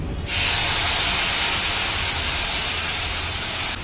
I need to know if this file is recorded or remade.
recorded